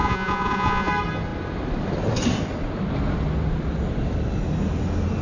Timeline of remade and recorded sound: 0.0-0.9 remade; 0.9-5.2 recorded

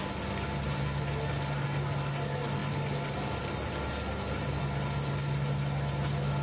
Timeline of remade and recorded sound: 0.0-6.4 recorded

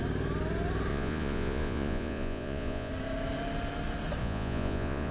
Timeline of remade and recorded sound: 0.0-0.9 recorded; 0.9-2.9 remade; 2.9-4.2 recorded; 4.2-5.1 remade

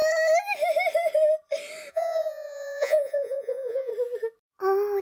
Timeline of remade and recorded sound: 0.0-1.9 recorded; 1.9-3.9 remade; 3.9-5.0 recorded

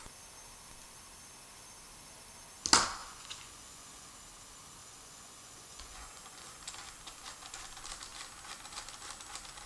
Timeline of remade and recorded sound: 0.0-3.0 recorded; 3.0-4.1 remade; 4.1-4.8 recorded; 4.8-6.6 remade; 6.6-9.7 recorded

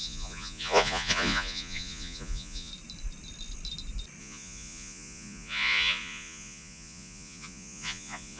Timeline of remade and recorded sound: 0.0-2.7 remade; 2.7-4.2 recorded; 4.2-8.4 remade

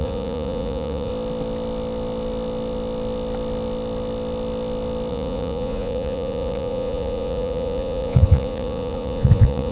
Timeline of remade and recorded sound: 0.0-1.1 remade; 1.1-5.1 recorded; 5.1-9.7 remade

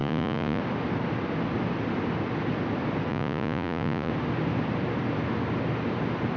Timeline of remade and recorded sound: 0.0-0.6 remade; 0.6-3.1 recorded; 3.1-4.1 remade; 4.1-6.4 recorded